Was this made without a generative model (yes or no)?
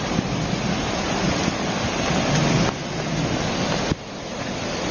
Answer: yes